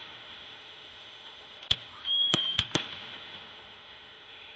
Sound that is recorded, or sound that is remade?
remade